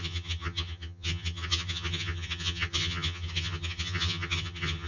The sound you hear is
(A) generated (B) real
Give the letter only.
A